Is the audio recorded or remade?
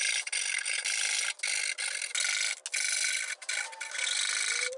recorded